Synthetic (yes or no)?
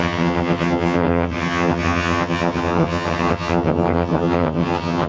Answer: yes